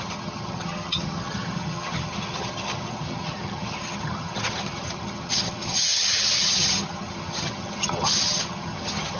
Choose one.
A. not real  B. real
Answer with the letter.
A